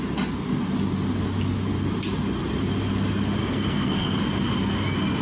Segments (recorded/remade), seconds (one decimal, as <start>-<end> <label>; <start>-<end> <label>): 0.0-3.4 recorded; 3.4-4.2 remade; 4.2-5.2 recorded